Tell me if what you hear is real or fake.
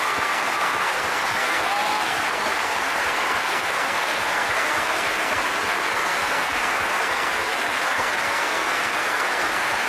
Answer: fake